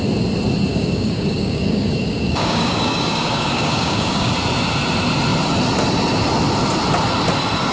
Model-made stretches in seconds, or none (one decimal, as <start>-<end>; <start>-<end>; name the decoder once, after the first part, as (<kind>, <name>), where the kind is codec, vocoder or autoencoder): 0.7-4.3 (codec, DAC)